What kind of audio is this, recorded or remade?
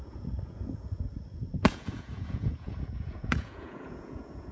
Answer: remade